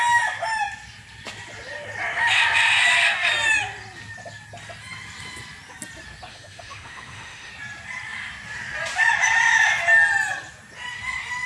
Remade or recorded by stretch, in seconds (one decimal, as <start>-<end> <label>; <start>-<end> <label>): 0.0-6.3 recorded; 6.3-7.5 remade; 7.5-11.5 recorded